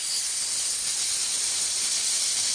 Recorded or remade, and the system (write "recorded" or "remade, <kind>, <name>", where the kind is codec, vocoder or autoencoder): recorded